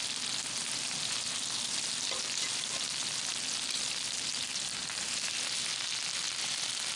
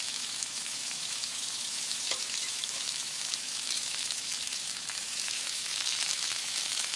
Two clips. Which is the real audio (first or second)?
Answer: first